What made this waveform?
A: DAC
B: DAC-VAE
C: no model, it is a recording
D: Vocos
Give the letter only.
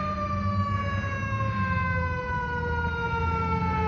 C